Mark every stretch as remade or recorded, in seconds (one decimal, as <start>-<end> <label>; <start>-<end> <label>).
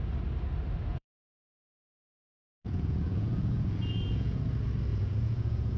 0.0-0.9 recorded; 0.9-4.4 remade; 4.4-4.9 recorded; 4.9-5.8 remade